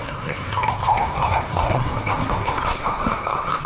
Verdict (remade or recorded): remade